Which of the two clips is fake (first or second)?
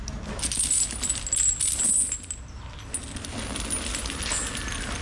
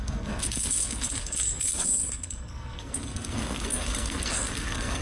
second